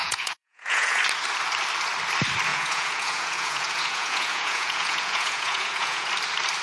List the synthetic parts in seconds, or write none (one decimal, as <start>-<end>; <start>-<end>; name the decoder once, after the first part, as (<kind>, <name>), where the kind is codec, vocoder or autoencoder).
0.0-1.0 (vocoder, Vocos); 2.5-6.1